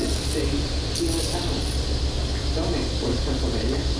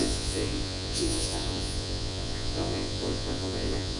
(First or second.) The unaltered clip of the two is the first